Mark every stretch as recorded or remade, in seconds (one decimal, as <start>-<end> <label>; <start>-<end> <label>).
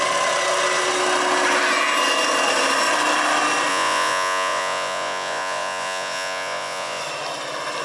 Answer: 0.0-3.7 recorded; 3.7-7.0 remade; 7.0-7.8 recorded